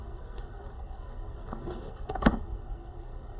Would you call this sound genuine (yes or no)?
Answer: no